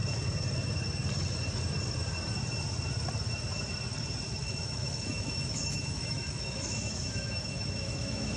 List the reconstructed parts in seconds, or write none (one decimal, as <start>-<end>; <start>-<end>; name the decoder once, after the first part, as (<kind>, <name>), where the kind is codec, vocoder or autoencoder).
4.4-8.4 (autoencoder, DAC-VAE)